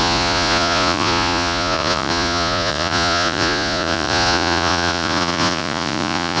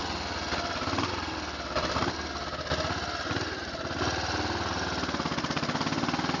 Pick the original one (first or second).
second